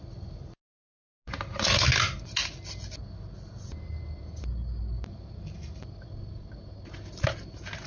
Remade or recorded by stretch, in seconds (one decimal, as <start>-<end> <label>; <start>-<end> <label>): 0.0-7.9 recorded